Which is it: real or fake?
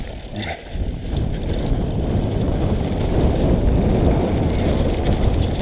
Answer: real